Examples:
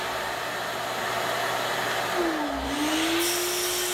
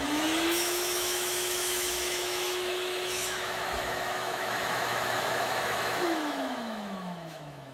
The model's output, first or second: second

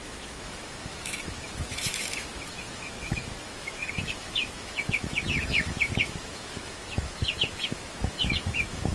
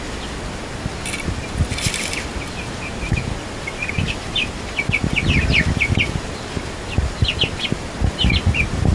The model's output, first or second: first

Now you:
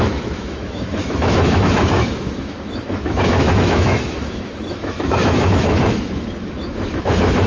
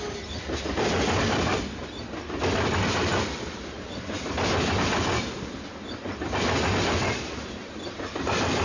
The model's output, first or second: first